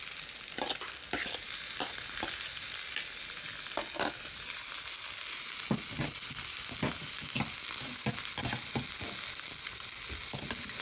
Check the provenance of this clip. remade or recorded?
recorded